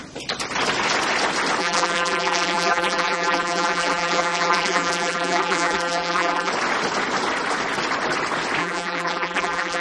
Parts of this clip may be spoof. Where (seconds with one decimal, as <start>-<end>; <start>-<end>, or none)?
1.6-6.5; 8.6-9.8